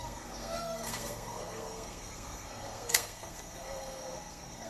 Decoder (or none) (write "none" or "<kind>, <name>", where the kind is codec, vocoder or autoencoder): codec, SNAC